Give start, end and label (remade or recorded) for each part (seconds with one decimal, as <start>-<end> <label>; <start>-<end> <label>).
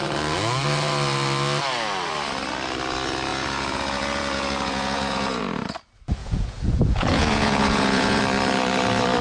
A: 0.0-3.3 recorded; 3.3-5.4 remade; 5.4-6.2 recorded; 6.2-8.2 remade; 8.2-9.2 recorded